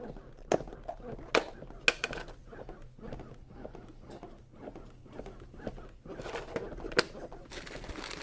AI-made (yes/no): no